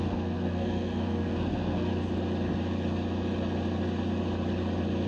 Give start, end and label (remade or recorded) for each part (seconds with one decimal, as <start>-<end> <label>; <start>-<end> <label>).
0.0-1.9 remade; 1.9-5.1 recorded

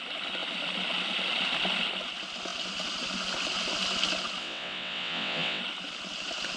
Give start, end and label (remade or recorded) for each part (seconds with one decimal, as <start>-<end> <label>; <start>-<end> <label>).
0.0-4.4 recorded; 4.4-5.6 remade; 5.6-6.6 recorded

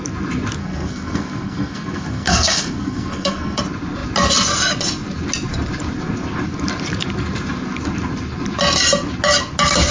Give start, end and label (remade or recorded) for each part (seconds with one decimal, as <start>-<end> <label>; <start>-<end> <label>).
0.0-0.6 recorded; 0.6-3.6 remade; 3.6-9.9 recorded

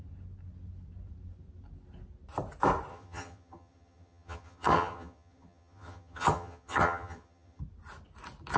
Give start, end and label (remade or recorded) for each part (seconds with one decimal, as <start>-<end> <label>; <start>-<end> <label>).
0.0-2.9 recorded; 2.9-7.6 remade; 7.6-8.6 recorded

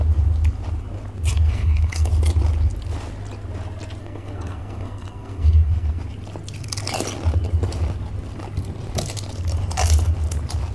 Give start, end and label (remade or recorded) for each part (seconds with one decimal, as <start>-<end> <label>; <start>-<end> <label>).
0.0-1.3 recorded; 1.3-2.1 remade; 2.1-4.0 recorded; 4.0-6.0 remade; 6.0-10.7 recorded

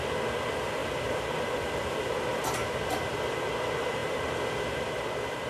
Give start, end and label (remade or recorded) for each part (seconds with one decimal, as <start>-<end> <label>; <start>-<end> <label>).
0.0-0.8 recorded; 0.8-2.4 remade; 2.4-4.0 recorded; 4.0-5.5 remade

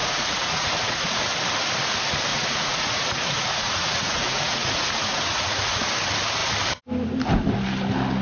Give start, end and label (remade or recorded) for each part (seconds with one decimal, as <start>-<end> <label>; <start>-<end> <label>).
0.0-1.2 remade; 1.2-2.3 recorded; 2.3-5.8 remade; 5.8-8.2 recorded